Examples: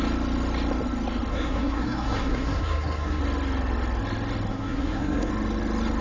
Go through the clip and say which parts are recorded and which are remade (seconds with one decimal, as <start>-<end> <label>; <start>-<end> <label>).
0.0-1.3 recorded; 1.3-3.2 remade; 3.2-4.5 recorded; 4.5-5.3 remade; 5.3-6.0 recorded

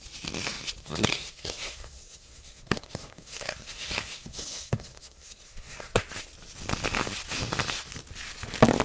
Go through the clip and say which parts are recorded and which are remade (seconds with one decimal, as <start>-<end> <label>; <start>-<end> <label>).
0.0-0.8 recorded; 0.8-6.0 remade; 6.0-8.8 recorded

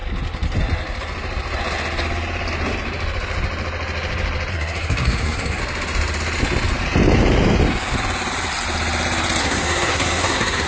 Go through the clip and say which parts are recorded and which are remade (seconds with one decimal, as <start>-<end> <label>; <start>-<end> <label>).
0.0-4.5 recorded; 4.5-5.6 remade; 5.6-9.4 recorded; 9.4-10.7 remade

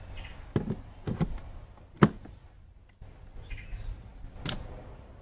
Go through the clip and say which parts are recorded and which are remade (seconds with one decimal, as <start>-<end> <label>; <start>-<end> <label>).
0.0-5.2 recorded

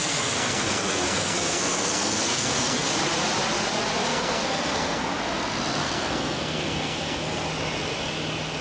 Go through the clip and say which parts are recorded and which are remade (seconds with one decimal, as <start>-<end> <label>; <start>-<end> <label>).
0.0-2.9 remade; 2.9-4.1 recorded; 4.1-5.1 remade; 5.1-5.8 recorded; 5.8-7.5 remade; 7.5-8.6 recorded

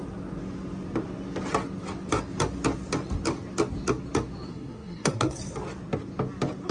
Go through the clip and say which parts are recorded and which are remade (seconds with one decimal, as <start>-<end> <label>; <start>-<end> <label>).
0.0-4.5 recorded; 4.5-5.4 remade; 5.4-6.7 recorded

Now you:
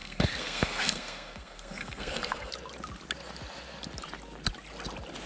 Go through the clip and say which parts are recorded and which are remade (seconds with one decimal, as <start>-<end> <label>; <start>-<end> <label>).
0.0-2.5 remade; 2.5-5.3 recorded

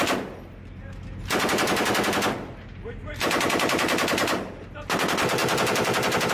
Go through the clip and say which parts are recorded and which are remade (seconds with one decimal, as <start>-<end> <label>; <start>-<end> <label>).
0.0-6.3 recorded